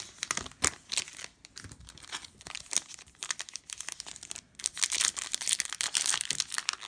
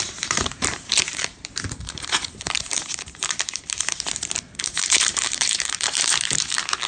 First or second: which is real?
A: first